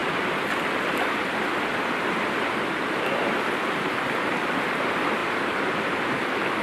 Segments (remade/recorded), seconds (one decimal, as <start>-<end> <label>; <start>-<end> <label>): 0.0-5.2 recorded; 5.2-6.0 remade; 6.0-6.6 recorded